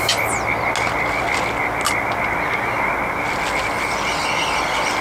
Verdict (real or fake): real